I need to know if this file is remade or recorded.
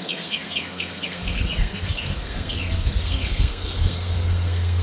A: remade